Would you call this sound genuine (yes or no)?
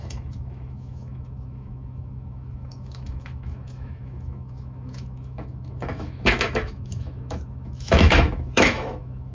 no